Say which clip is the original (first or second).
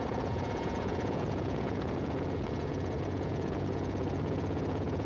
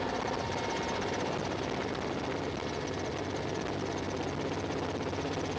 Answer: second